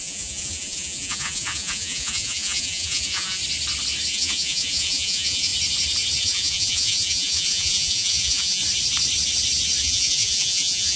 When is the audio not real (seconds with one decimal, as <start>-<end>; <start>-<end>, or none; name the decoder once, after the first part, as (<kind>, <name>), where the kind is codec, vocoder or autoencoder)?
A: 0.0-3.4 (vocoder, Vocos); 4.1-5.5; 6.2-8.6; 9.8-11.0